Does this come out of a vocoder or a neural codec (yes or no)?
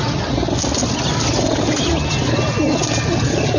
no